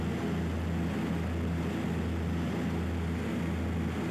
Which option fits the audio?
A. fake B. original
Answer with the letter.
B